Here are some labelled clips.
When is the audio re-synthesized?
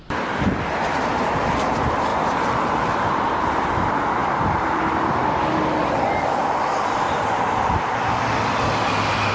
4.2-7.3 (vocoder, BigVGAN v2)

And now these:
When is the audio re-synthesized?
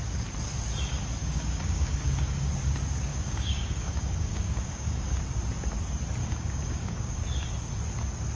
1.2-2.5 (codec, DAC); 3.1-5.2; 6.2-7.2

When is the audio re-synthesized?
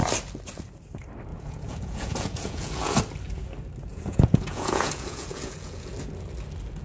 1.3-3.0 (vocoder, Vocos); 3.9-5.9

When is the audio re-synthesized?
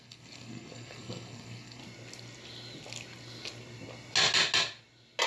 0.0-1.8 (codec, SNAC)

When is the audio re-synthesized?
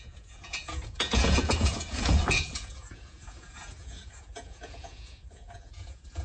0.0-6.2 (vocoder, Vocos)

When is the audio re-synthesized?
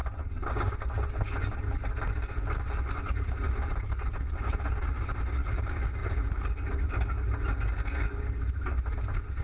none